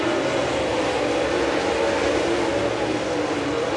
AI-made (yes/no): no